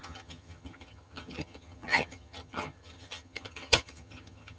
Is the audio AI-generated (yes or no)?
yes